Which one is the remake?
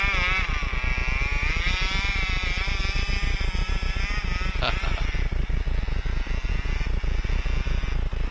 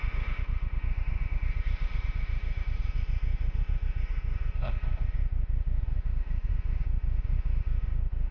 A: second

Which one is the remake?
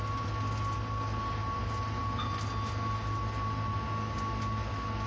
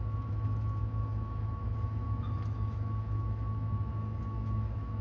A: second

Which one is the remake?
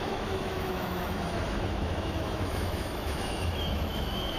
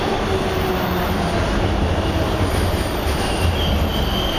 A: first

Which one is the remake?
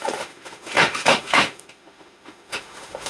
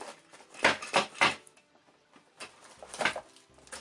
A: first